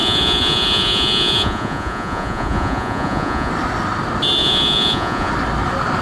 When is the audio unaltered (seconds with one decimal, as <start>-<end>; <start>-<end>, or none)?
3.5-4.4; 5.3-6.0